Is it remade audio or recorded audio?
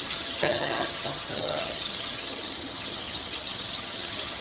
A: remade